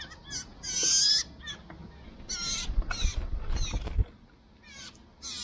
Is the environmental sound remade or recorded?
recorded